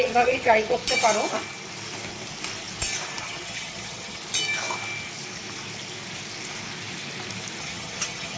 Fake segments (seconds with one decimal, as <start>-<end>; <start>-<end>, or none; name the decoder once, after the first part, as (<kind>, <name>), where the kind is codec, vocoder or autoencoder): 0.0-0.8 (vocoder, HiFi-GAN); 3.2-4.2; 7.6-8.4